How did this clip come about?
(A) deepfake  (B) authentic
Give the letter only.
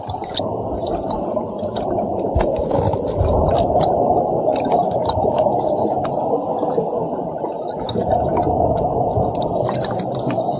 B